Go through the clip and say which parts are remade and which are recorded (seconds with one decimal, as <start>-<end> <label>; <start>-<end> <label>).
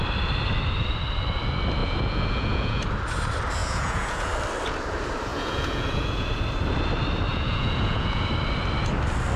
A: 0.0-1.8 recorded; 1.8-2.8 remade; 2.8-3.6 recorded; 3.6-4.3 remade; 4.3-5.3 recorded; 5.3-6.4 remade; 6.4-7.3 recorded; 7.3-8.3 remade; 8.3-9.4 recorded